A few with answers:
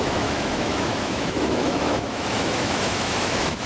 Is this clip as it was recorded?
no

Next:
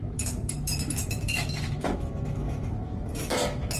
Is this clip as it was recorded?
no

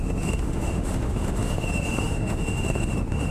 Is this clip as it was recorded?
no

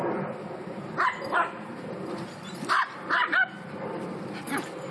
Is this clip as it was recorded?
yes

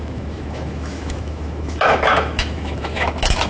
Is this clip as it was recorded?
no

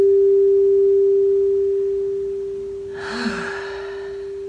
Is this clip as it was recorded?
yes